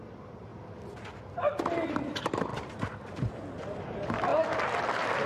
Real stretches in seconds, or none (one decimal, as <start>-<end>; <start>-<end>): 0.5-1.6; 2.5-3.1; 4.3-5.3